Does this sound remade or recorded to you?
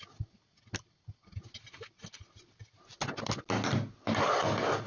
recorded